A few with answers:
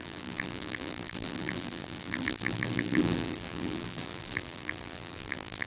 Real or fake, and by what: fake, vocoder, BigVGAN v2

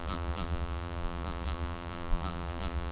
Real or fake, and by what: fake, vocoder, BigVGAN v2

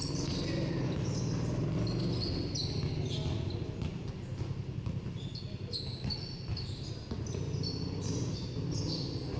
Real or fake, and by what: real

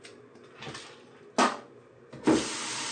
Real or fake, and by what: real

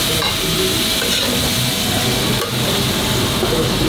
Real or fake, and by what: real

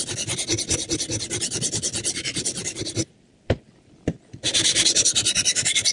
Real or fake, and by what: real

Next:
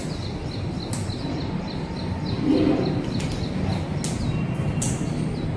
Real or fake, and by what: real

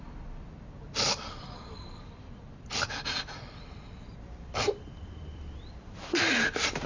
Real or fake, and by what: fake, vocoder, BigVGAN v2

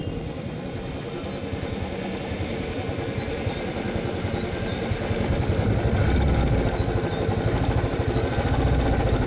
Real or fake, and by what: real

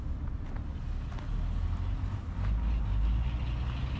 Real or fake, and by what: real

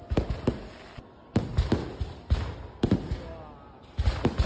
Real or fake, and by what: real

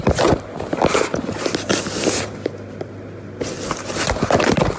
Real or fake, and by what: real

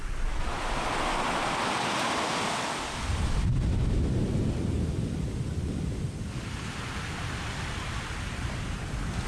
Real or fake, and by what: fake, vocoder, BigVGAN v2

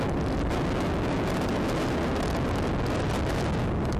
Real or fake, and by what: real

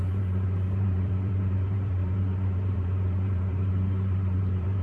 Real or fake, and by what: fake, vocoder, BigVGAN v2